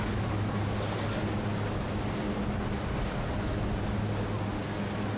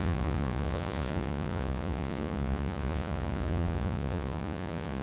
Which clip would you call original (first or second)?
first